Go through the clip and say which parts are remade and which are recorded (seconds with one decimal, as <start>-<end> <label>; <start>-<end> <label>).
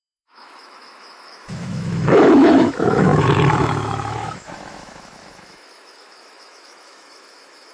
0.0-7.7 remade